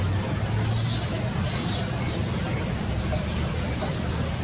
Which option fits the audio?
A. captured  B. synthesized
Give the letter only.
A